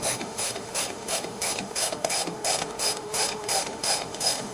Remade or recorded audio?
remade